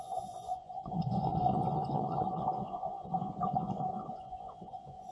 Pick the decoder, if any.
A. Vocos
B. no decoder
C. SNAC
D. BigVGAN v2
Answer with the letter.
A